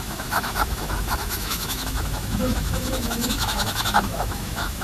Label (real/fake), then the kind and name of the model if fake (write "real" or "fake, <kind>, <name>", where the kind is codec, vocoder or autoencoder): fake, autoencoder, DAC-VAE